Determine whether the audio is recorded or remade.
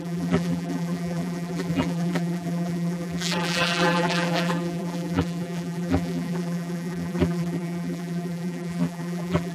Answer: remade